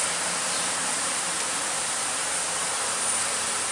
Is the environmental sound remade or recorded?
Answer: remade